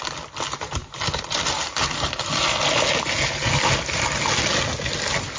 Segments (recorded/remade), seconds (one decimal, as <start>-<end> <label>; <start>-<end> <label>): 0.0-5.4 recorded